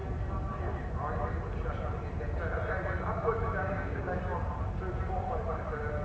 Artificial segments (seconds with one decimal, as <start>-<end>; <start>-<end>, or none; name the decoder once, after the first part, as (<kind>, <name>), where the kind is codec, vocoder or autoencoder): 3.6-4.2 (codec, DAC)